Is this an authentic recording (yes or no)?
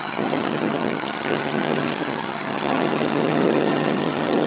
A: no